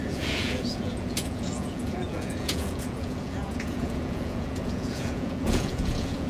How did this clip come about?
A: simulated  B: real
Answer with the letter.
A